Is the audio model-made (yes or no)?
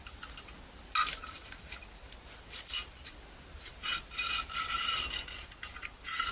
no